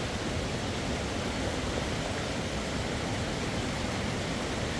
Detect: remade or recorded recorded